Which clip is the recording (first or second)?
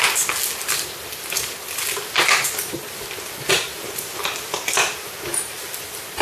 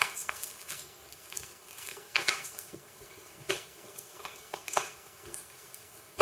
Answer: first